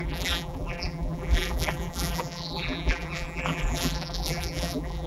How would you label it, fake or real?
fake